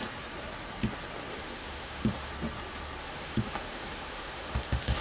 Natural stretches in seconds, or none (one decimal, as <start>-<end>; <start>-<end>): 0.0-1.3; 2.3-3.0